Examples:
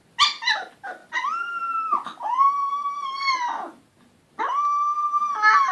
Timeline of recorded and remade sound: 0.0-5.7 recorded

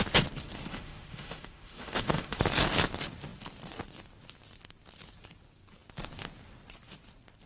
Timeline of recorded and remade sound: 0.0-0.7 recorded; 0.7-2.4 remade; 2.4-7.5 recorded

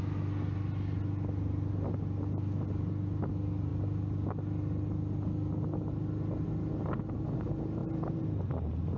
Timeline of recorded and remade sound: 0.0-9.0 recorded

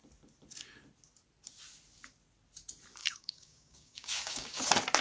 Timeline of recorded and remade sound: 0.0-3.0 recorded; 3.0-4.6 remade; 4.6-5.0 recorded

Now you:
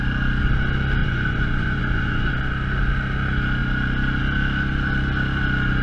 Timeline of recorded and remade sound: 0.0-1.0 recorded; 1.0-2.3 remade; 2.3-5.8 recorded